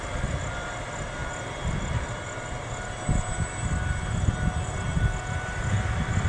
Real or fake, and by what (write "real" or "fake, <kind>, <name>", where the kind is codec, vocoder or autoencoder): real